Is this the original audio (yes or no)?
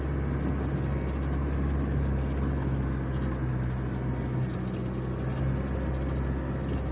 yes